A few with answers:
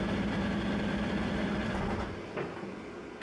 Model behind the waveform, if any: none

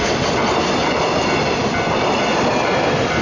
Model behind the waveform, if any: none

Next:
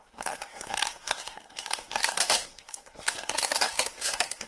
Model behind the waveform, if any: codec, SNAC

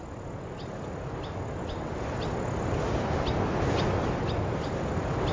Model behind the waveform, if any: none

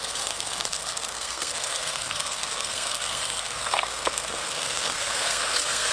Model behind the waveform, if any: codec, SNAC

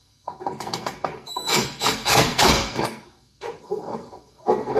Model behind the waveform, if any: codec, SNAC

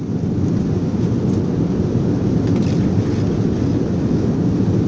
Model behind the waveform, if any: none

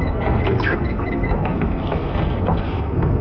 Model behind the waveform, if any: codec, SNAC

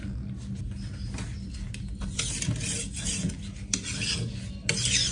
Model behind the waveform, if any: none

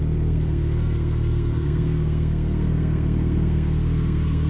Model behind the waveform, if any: codec, SNAC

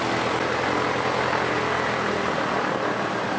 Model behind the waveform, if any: none